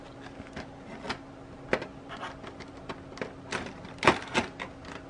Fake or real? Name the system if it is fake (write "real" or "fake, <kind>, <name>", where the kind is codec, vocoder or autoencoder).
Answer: real